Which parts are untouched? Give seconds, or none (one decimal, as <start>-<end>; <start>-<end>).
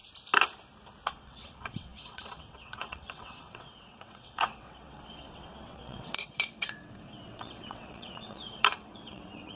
0.0-1.1